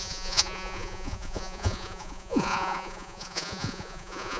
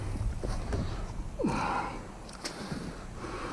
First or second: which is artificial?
first